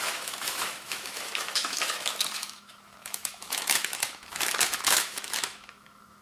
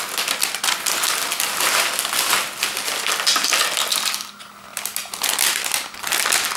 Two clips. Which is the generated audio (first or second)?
first